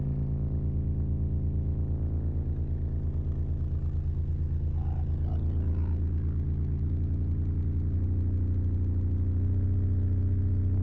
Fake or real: real